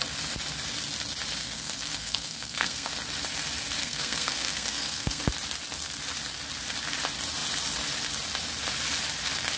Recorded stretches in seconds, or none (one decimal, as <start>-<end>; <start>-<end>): 0.0-1.4; 2.9-3.8; 5.2-9.6